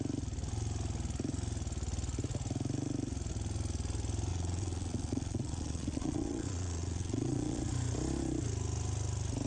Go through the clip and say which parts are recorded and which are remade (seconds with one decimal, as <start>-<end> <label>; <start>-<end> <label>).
0.0-4.3 recorded; 4.3-7.6 remade; 7.6-9.5 recorded